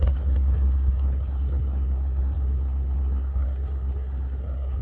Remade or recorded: remade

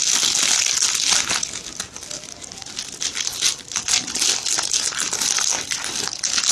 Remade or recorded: recorded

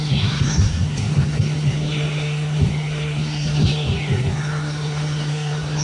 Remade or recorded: remade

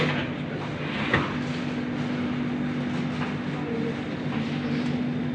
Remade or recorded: recorded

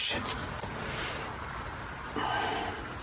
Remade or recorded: recorded